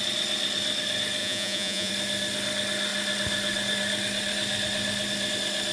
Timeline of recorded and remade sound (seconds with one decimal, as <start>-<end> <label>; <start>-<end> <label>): 0.0-1.2 recorded; 1.2-1.9 remade; 1.9-5.7 recorded